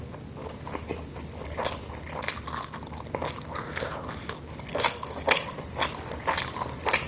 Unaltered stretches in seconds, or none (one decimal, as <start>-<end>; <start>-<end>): 0.0-4.7; 5.4-7.1